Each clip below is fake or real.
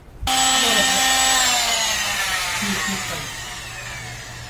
real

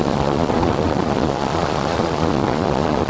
fake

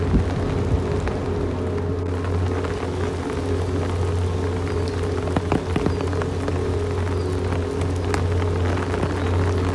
real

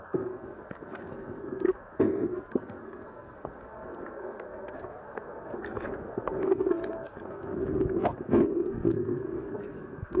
fake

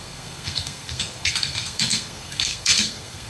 fake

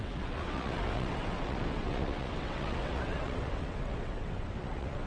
fake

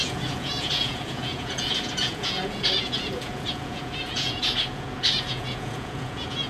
fake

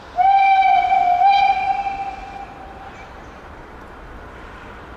real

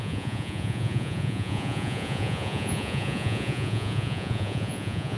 fake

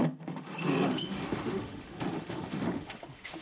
fake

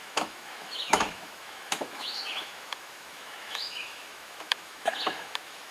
fake